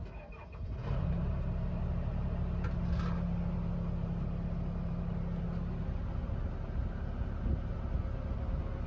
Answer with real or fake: real